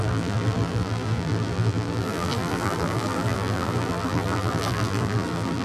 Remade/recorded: remade